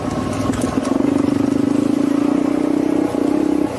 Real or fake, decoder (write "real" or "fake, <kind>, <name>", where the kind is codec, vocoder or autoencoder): real